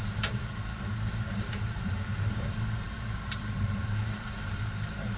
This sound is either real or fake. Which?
fake